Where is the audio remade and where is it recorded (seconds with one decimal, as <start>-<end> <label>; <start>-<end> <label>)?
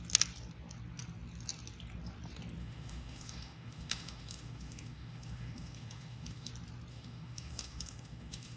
0.0-2.6 recorded; 2.6-6.5 remade; 6.5-6.9 recorded; 6.9-8.6 remade